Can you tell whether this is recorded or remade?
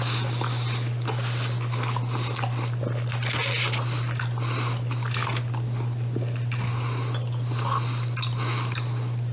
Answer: recorded